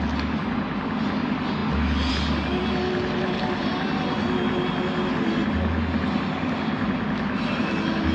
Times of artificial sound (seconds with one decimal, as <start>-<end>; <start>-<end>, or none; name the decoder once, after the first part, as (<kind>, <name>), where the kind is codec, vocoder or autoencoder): none